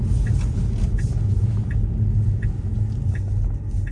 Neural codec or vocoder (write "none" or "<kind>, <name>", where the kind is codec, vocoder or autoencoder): none